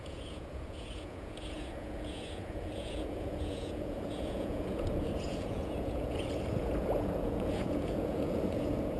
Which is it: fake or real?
fake